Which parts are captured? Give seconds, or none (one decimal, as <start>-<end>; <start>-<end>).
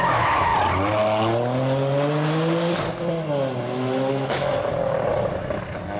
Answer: 0.5-4.1; 4.7-6.0